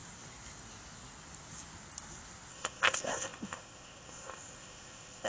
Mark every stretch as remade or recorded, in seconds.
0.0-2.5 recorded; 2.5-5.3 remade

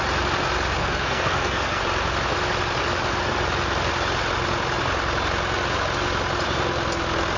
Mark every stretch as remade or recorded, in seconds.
0.0-0.8 recorded; 0.8-1.8 remade; 1.8-7.4 recorded